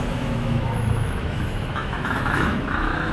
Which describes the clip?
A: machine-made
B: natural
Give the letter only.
A